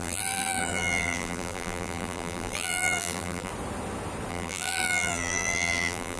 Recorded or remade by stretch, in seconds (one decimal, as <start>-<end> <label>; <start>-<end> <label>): 0.0-3.5 remade; 3.5-4.3 recorded; 4.3-6.2 remade